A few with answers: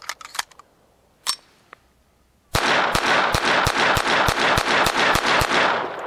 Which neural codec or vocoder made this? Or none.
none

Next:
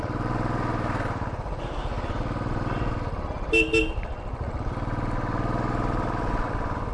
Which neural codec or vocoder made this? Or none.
none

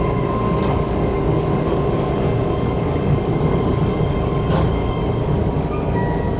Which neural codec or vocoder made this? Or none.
codec, DAC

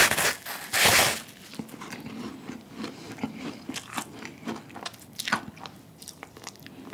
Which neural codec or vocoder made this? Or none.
none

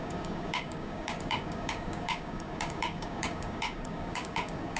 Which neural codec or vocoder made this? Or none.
codec, DAC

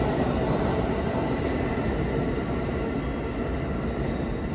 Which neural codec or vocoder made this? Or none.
none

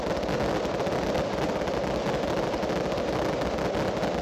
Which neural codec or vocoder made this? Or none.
none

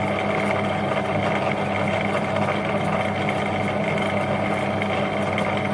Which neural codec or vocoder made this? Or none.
none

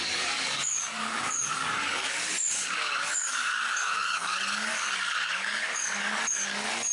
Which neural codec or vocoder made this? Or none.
codec, DAC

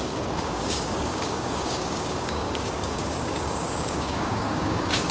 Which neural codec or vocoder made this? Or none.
codec, DAC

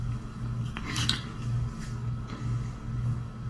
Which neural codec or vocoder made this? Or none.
codec, DAC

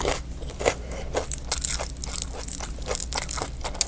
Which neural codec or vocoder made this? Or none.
none